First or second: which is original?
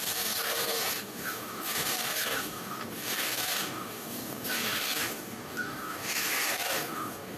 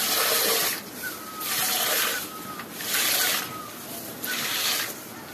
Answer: second